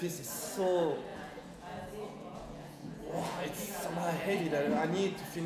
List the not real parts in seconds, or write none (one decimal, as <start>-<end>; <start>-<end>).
1.1-4.4